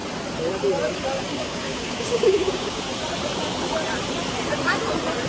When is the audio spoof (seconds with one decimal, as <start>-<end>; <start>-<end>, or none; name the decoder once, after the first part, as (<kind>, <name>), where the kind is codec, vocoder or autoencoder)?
1.3-2.8 (codec, DAC)